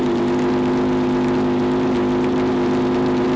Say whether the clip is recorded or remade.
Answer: recorded